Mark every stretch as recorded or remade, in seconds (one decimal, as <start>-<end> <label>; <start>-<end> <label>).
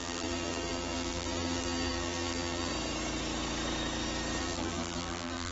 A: 0.0-2.7 remade; 2.7-4.4 recorded; 4.4-5.5 remade